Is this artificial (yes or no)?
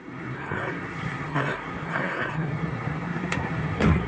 yes